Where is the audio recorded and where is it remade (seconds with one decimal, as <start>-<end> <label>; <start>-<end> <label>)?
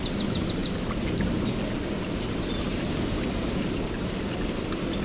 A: 0.0-5.0 recorded